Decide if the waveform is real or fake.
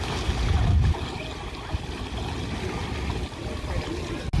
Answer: real